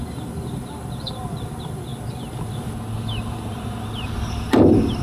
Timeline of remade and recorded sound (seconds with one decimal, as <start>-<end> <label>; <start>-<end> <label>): 0.0-5.0 remade